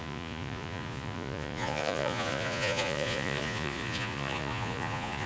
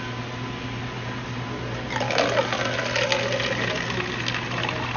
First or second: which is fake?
first